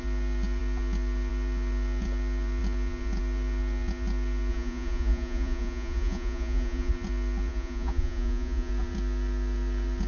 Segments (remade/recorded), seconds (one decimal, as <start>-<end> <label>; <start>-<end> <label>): 0.0-4.5 recorded; 4.5-6.9 remade; 6.9-7.5 recorded; 7.5-8.7 remade; 8.7-10.1 recorded